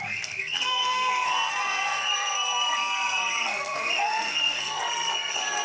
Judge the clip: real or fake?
fake